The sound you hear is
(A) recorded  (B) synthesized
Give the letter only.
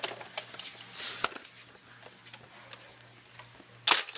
A